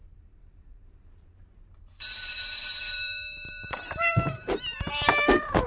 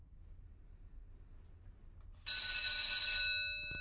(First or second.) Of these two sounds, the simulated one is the first